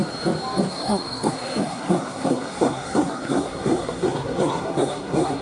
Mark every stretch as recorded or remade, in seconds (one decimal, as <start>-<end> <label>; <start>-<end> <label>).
0.0-0.7 recorded; 0.7-5.4 remade